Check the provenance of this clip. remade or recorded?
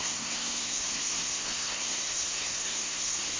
remade